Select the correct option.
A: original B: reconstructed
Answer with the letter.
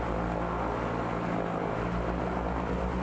A